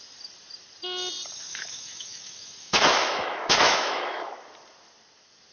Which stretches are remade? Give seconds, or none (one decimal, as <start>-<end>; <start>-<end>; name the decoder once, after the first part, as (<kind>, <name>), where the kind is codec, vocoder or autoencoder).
1.5-4.3 (autoencoder, DAC-VAE)